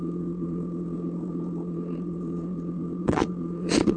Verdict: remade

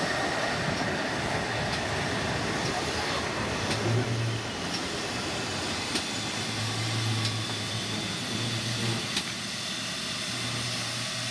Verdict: recorded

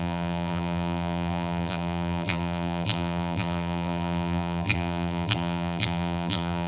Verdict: remade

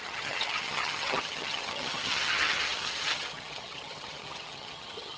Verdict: remade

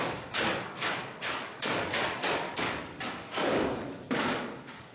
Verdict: remade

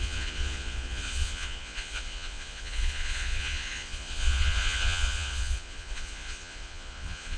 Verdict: remade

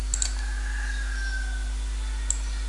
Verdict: recorded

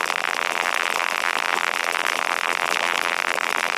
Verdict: remade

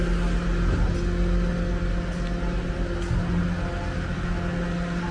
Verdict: recorded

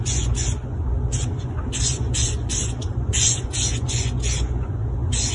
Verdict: remade